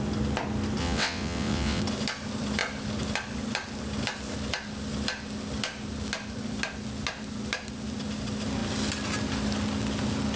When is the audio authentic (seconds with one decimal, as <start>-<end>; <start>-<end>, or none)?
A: 0.0-0.8; 1.8-10.4